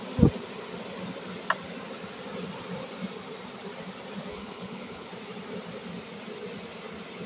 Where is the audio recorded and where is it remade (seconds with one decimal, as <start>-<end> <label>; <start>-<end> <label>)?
0.0-4.3 recorded; 4.3-5.1 remade; 5.1-7.3 recorded